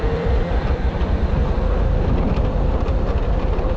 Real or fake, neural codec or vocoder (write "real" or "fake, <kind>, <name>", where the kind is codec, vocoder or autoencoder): real